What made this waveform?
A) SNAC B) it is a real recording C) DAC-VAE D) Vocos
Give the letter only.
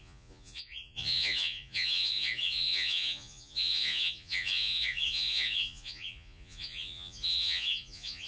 D